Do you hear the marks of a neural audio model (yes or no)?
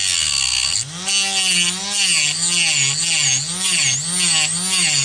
no